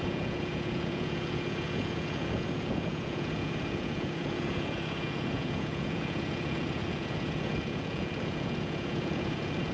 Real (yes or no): no